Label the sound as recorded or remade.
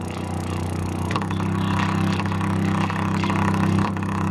remade